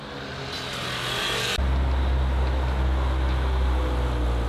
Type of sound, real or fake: real